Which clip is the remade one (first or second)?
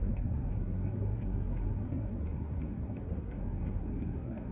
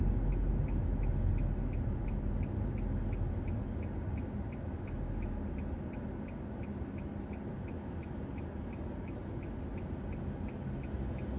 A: first